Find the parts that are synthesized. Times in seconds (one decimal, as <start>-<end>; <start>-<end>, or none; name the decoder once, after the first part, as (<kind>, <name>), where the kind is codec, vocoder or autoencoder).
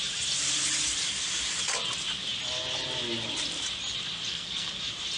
4.3-4.8 (codec, SNAC)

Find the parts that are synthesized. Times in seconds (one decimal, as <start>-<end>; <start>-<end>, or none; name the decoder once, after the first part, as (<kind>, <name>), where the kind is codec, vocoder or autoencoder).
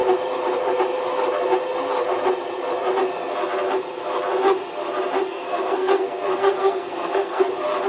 5.3-7.5 (codec, SNAC)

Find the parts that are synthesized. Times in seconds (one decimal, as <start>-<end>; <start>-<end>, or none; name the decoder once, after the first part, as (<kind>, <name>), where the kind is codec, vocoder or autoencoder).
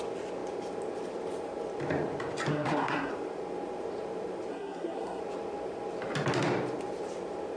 2.5-3.1 (codec, SNAC); 4.5-5.2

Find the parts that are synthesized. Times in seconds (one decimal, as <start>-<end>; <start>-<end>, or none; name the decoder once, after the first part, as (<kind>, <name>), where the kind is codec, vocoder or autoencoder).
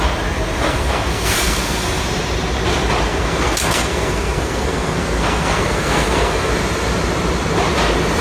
0.6-2.0 (codec, SNAC); 3.1-6.5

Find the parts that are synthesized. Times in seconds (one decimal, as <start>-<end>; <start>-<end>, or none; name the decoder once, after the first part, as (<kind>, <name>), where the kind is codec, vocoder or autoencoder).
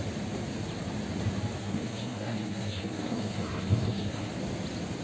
1.6-4.3 (codec, SNAC)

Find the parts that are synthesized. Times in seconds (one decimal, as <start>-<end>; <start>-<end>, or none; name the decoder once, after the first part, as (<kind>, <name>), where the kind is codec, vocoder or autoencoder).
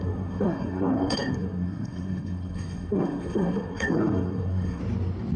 0.0-4.8 (codec, SNAC)